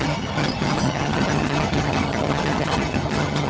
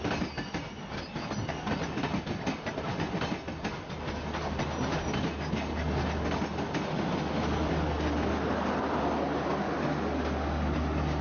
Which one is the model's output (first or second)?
first